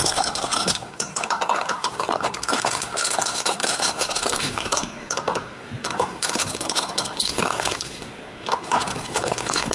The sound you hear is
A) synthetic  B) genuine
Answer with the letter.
A